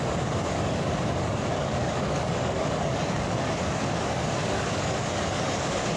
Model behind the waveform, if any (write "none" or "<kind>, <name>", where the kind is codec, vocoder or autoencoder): codec, DAC